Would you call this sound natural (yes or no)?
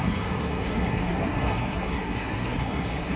no